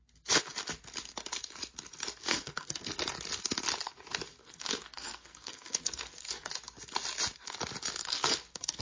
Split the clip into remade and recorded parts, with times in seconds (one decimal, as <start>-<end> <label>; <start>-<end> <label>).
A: 0.0-2.3 recorded; 2.3-2.9 remade; 2.9-4.4 recorded; 4.4-6.5 remade; 6.5-8.0 recorded; 8.0-8.8 remade